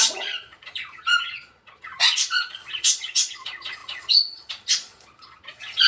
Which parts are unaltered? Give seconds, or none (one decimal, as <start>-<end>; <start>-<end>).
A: none